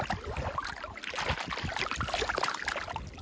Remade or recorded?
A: recorded